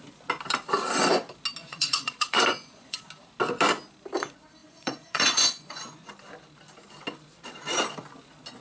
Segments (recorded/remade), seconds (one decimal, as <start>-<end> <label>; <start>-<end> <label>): 0.0-1.6 recorded; 1.6-3.0 remade; 3.0-4.6 recorded; 4.6-6.1 remade; 6.1-8.6 recorded